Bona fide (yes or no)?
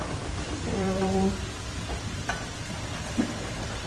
no